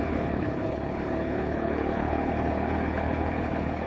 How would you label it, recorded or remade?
remade